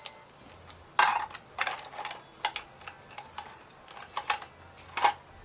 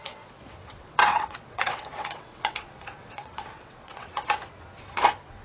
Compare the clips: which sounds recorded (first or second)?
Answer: first